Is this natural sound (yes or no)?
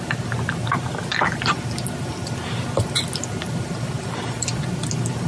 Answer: yes